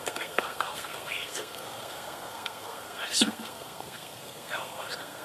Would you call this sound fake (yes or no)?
yes